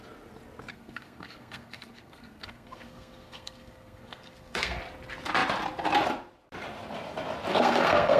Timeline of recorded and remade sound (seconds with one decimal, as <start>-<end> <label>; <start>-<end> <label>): 0.0-0.7 recorded; 0.7-4.8 remade; 4.8-7.5 recorded; 7.5-8.2 remade